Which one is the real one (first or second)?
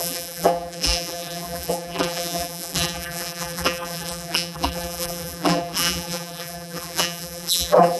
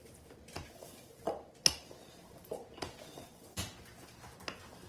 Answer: second